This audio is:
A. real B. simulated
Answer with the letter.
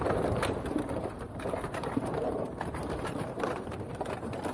B